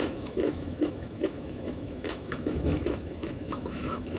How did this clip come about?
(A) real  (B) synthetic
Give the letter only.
B